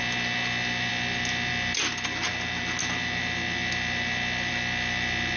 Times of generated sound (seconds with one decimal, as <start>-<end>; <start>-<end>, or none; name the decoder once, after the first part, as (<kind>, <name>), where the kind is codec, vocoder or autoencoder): none

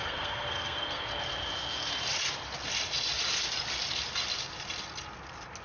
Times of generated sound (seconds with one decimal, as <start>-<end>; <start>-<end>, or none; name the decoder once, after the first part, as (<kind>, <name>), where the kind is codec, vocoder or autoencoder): 0.0-1.1 (codec, SNAC)